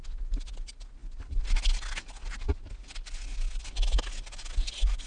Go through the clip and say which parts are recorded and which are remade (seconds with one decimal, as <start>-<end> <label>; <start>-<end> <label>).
0.0-5.1 recorded